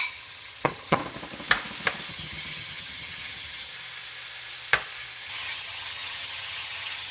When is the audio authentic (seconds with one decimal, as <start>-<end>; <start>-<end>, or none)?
1.0-2.1; 3.7-5.2